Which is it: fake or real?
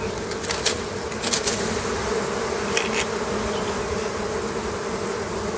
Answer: real